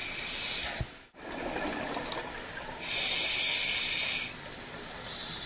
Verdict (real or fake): real